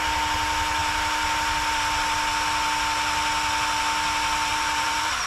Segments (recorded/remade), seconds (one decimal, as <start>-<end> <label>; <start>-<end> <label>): 0.0-4.5 recorded; 4.5-5.3 remade